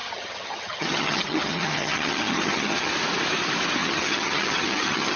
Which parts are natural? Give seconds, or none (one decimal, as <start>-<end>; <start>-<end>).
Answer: 2.9-3.8